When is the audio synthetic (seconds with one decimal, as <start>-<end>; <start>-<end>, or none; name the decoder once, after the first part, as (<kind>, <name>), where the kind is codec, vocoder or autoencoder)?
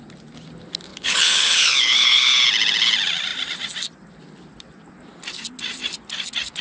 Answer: 0.9-2.3 (codec, HILCodec)